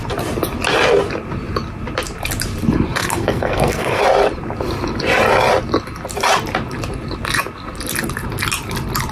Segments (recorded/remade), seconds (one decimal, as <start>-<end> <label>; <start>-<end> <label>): 0.0-3.0 recorded; 3.0-4.0 remade; 4.0-9.1 recorded